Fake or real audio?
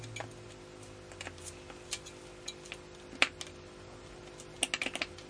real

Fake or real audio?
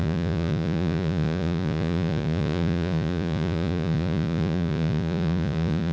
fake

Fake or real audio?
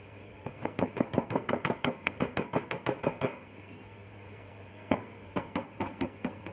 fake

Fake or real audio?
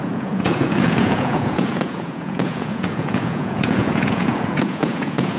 fake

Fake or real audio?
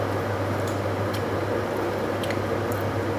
real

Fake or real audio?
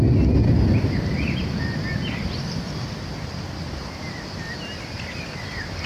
real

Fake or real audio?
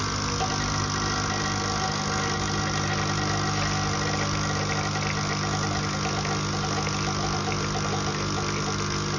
real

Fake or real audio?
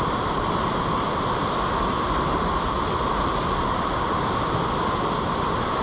real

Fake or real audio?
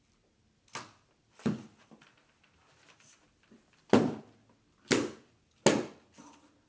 real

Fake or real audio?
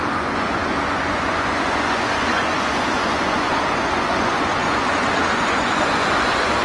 fake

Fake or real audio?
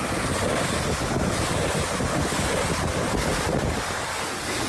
real